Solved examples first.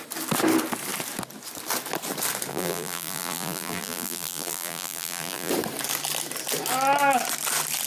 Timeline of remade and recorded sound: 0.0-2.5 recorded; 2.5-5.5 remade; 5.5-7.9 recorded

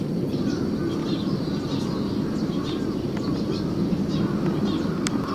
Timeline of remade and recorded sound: 0.0-1.0 recorded; 1.0-3.6 remade; 3.6-5.3 recorded

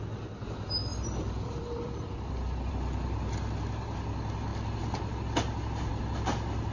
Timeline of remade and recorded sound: 0.0-0.9 recorded; 0.9-2.7 remade; 2.7-4.5 recorded; 4.5-5.1 remade; 5.1-6.7 recorded

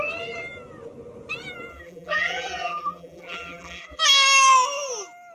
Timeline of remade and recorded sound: 0.0-1.7 recorded; 1.7-4.0 remade; 4.0-5.3 recorded

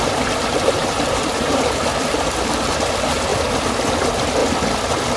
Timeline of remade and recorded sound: 0.0-0.8 recorded; 0.8-1.6 remade; 1.6-5.2 recorded

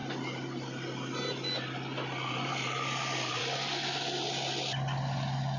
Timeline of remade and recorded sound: 0.0-5.6 recorded

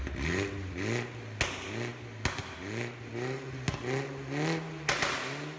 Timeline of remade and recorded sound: 0.0-5.6 recorded

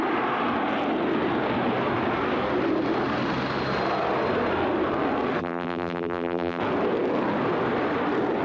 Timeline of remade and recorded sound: 0.0-5.4 recorded; 5.4-6.6 remade; 6.6-8.4 recorded